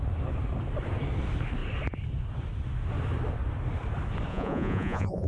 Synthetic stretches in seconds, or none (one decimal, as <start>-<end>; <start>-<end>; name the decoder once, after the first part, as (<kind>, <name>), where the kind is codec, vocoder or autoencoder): 4.3-5.3 (vocoder, Vocos)

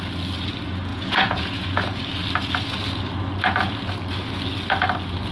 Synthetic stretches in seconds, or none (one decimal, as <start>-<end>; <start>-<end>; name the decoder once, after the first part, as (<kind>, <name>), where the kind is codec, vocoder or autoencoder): 0.9-2.0 (vocoder, Vocos)

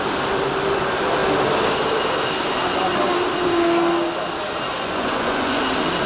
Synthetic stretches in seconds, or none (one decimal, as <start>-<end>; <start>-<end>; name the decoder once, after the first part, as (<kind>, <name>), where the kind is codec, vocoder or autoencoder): 4.7-5.6 (vocoder, Vocos)

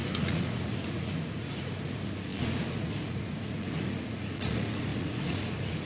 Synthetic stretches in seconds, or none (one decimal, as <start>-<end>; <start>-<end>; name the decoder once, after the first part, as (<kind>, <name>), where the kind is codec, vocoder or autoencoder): 0.0-5.9 (vocoder, Vocos)

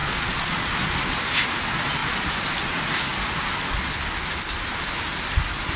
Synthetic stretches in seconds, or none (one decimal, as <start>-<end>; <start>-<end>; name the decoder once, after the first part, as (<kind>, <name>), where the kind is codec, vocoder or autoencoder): 0.0-0.7 (vocoder, Vocos)

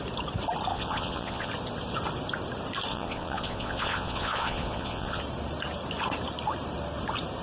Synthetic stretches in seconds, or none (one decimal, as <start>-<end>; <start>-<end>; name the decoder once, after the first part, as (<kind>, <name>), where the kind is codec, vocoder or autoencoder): 0.7-1.5 (vocoder, Vocos); 2.9-5.2